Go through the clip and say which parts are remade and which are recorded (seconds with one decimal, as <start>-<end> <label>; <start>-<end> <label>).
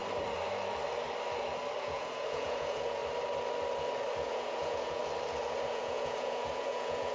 0.0-1.8 recorded; 1.8-3.0 remade; 3.0-4.1 recorded; 4.1-5.0 remade; 5.0-5.7 recorded; 5.7-7.1 remade